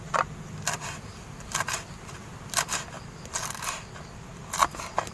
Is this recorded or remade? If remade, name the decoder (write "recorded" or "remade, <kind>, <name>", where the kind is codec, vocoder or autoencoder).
recorded